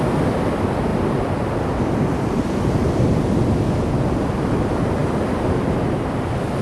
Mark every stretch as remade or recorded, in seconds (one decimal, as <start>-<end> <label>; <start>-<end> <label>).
0.0-6.6 recorded